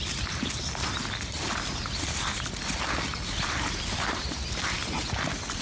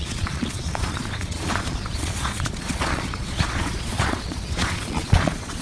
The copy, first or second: second